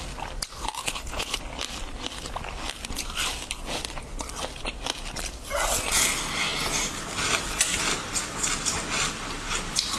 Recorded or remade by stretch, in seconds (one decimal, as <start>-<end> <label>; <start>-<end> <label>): 0.0-0.8 recorded; 0.8-1.4 remade; 1.4-10.0 recorded